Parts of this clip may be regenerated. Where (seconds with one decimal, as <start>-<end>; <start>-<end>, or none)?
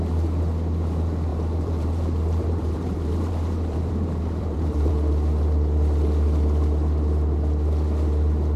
1.3-4.9